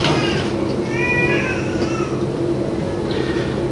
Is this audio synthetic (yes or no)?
no